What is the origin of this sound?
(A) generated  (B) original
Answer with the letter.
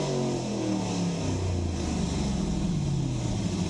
B